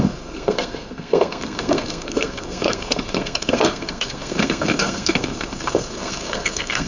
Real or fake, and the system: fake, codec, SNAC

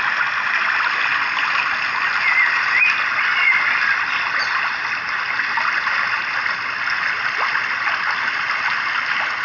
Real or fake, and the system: real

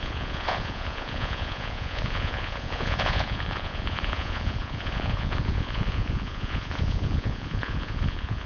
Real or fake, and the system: fake, vocoder, Vocos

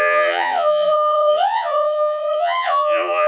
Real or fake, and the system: fake, vocoder, Vocos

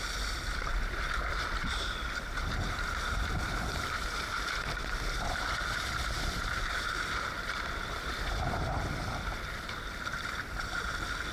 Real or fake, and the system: fake, vocoder, BigVGAN v2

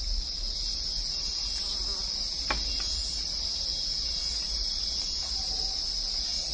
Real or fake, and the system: real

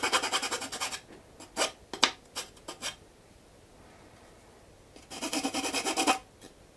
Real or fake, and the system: real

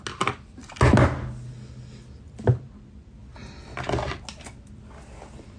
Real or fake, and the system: real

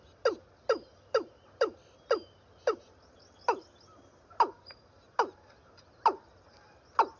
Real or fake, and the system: real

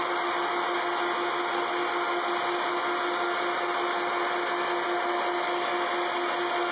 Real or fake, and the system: real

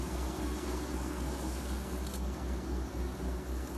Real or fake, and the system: fake, codec, SNAC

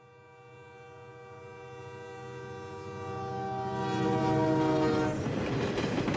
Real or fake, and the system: real